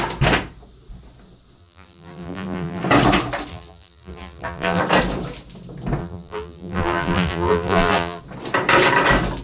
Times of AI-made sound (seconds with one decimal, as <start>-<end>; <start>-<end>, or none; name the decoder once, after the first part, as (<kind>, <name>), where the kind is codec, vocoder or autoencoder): 1.6-2.8 (vocoder, BigVGAN v2); 3.5-4.8; 6.0-8.2